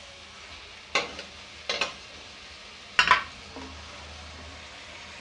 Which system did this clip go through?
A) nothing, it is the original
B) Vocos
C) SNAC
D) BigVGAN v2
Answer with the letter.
A